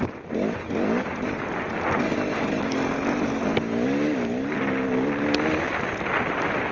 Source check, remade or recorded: recorded